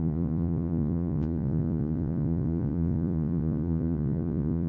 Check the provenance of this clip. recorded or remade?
remade